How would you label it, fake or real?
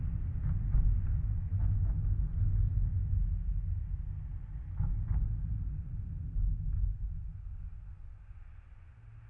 real